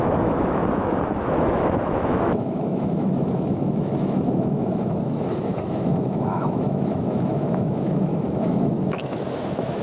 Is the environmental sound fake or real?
fake